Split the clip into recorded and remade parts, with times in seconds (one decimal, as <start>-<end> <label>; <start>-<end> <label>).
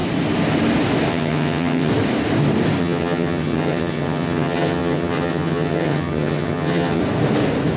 0.0-1.1 recorded; 1.1-1.9 remade; 1.9-2.8 recorded; 2.8-7.0 remade; 7.0-7.8 recorded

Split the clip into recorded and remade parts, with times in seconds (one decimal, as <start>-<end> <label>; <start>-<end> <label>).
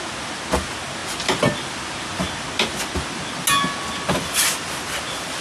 0.0-5.4 recorded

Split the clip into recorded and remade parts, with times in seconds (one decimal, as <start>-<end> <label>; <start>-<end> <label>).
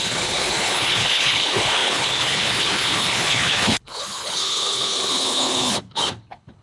0.0-6.6 remade